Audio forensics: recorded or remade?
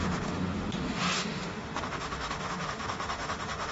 remade